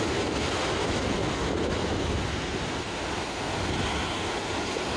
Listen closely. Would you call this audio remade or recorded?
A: recorded